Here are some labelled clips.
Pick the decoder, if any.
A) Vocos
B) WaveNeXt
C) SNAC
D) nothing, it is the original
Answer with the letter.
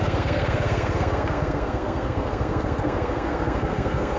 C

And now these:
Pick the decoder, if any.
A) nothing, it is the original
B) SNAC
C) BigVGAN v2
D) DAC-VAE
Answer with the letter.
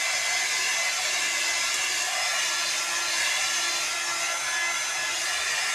A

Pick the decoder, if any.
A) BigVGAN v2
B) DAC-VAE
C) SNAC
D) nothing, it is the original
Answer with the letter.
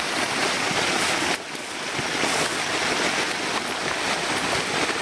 D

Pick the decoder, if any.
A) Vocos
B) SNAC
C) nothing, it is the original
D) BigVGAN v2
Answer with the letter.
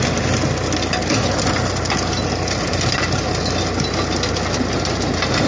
C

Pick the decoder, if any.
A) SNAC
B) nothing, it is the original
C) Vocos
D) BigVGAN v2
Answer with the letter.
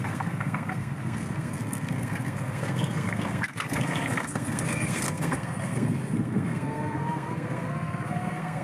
A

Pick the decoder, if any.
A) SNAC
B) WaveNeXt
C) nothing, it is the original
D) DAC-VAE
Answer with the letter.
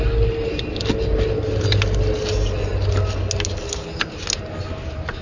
C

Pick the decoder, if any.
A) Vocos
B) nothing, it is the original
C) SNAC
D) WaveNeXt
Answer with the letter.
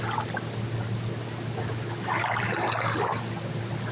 B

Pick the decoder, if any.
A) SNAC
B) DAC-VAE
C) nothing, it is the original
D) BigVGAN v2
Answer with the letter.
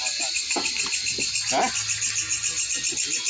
C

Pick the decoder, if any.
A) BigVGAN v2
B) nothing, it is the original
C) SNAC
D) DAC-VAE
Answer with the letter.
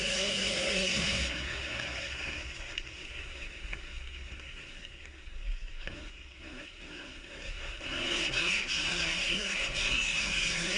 C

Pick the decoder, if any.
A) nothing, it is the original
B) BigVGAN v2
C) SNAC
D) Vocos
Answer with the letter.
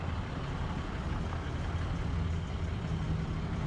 A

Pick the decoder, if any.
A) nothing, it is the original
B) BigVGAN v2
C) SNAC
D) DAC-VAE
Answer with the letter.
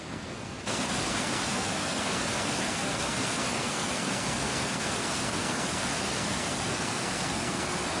C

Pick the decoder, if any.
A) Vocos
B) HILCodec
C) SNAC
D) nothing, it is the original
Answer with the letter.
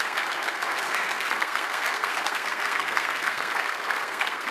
C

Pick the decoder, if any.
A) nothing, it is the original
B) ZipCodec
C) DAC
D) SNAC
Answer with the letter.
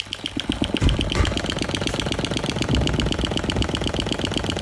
A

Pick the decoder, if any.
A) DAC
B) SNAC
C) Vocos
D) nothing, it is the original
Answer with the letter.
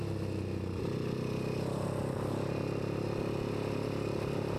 D